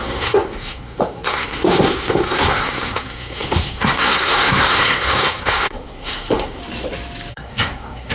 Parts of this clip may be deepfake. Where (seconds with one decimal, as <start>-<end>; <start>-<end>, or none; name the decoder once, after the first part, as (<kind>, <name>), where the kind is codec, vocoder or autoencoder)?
0.0-6.6 (codec, SNAC); 7.3-8.1